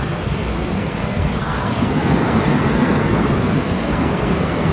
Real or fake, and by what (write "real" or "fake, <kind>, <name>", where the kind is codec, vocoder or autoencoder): fake, codec, SNAC